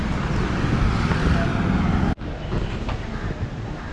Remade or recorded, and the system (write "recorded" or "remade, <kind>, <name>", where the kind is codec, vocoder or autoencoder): recorded